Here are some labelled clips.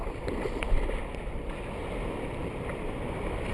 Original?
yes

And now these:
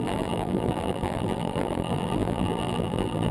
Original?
no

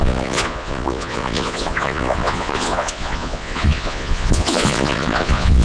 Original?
no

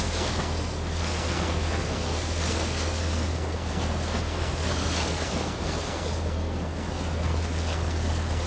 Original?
no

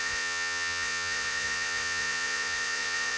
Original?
no